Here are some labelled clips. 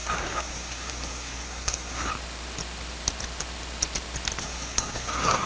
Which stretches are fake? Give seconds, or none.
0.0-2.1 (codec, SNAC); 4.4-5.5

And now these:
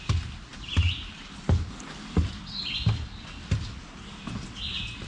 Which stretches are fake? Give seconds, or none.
0.5-2.4 (vocoder, BigVGAN v2)

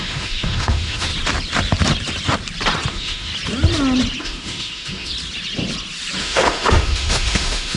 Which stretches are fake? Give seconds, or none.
0.0-1.1 (autoencoder, DAC-VAE); 2.9-3.3; 4.2-5.1; 6.2-7.8

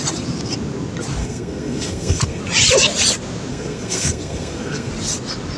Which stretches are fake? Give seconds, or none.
1.2-2.4 (codec, SNAC); 3.5-4.9

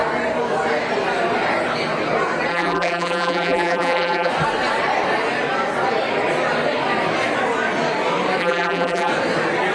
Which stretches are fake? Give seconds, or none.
2.5-4.3 (vocoder, BigVGAN v2); 8.4-9.1

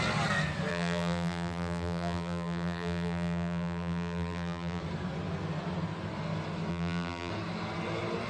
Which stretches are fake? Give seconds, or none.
0.7-4.8 (vocoder, BigVGAN v2); 6.7-7.3